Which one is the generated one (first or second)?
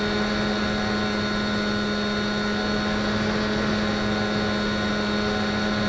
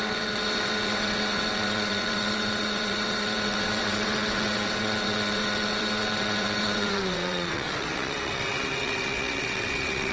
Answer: second